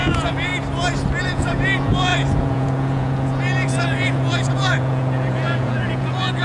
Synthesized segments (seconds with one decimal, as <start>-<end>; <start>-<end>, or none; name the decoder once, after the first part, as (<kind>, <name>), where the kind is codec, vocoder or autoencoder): 0.0-0.5 (vocoder, Vocos); 1.2-6.4